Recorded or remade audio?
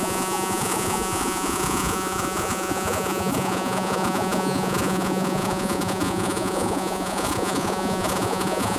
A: remade